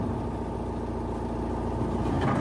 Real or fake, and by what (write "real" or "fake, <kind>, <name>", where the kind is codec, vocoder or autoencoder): real